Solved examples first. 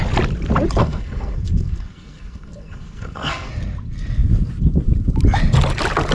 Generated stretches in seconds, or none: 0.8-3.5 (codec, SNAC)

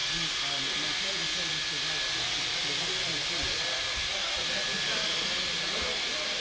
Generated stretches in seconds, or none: none

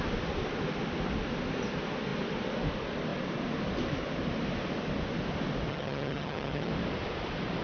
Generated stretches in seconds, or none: 5.7-6.7 (vocoder, HiFi-GAN)

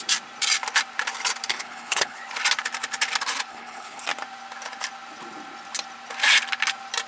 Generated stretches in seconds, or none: 1.5-2.2 (codec, HILCodec); 3.5-4.0